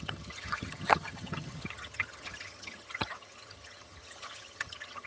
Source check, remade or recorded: remade